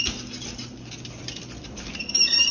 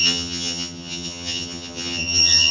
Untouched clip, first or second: first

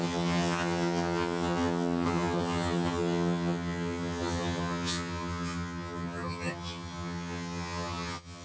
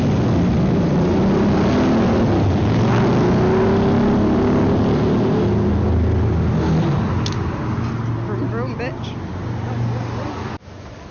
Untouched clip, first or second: second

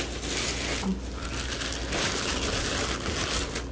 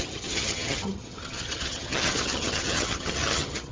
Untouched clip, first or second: first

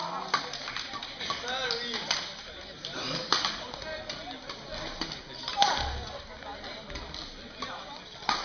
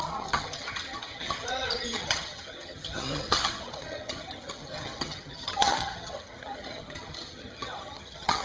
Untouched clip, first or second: first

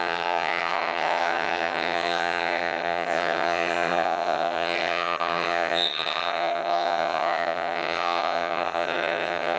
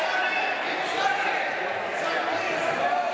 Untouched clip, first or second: second